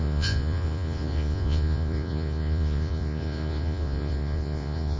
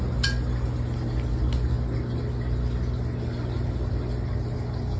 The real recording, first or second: second